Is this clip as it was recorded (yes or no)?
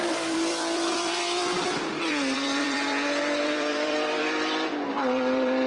no